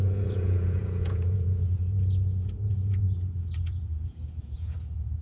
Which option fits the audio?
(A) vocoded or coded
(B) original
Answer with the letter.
A